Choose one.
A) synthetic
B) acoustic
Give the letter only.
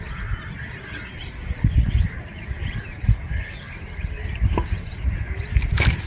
B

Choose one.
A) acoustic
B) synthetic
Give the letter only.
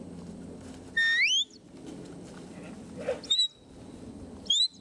A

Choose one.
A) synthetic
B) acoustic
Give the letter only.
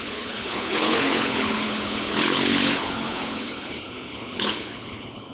A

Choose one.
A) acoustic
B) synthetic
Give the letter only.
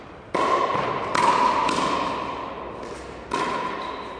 A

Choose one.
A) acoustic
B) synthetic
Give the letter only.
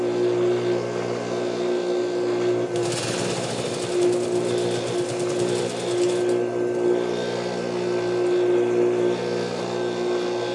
A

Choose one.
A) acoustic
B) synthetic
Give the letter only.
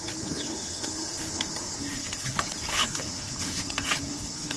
B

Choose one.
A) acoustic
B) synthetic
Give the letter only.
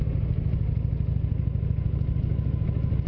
A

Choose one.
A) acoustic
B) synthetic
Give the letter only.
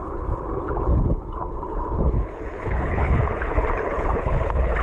B